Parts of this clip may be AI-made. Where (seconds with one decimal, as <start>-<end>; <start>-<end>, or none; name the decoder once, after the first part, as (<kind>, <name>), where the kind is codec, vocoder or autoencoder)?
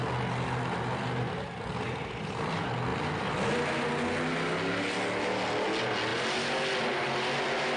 none